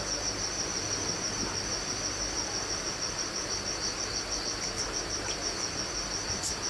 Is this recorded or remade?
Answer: recorded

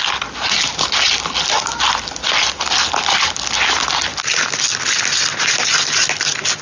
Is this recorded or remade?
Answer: recorded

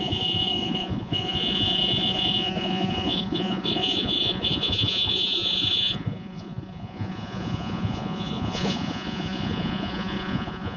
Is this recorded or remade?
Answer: remade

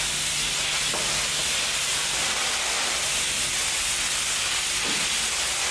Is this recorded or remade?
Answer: recorded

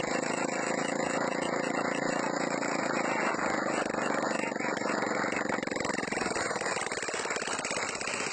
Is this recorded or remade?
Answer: recorded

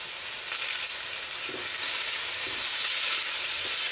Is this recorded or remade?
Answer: recorded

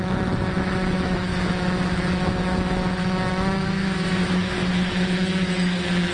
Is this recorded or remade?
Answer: remade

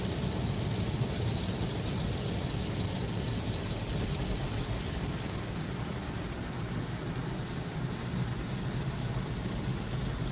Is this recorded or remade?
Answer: recorded